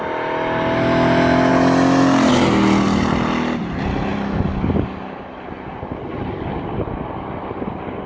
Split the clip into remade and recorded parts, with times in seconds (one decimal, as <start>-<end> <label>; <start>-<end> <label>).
0.0-8.1 recorded